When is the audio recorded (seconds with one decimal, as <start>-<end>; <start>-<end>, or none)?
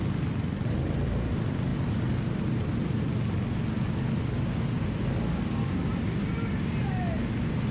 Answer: 0.0-7.7